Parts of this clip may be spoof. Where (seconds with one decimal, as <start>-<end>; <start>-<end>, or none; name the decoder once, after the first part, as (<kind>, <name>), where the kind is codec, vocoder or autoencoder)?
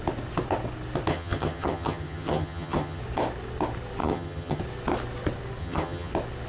1.1-3.0 (vocoder, HiFi-GAN); 4.0-4.6; 5.6-6.1